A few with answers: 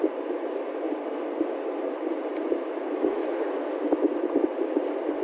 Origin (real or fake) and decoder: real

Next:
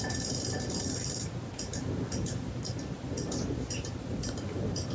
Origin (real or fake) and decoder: real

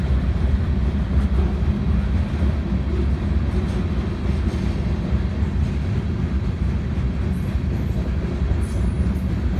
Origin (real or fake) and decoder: real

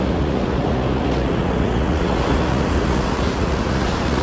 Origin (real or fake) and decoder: fake, vocoder, Vocos